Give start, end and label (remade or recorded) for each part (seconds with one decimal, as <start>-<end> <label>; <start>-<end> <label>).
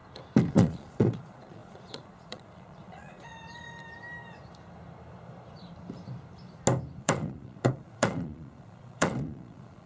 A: 0.0-0.5 recorded; 0.5-3.3 remade; 3.3-7.0 recorded; 7.0-9.9 remade